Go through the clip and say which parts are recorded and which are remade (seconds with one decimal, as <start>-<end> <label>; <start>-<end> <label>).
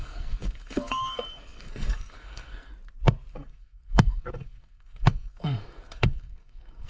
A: 0.0-2.7 remade; 2.7-3.3 recorded; 3.3-6.9 remade